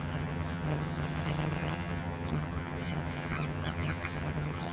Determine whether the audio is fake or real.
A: fake